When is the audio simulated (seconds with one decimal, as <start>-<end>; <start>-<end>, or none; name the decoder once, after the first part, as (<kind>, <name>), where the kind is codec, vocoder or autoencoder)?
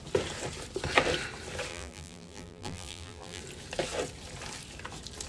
1.7-3.4 (vocoder, BigVGAN v2)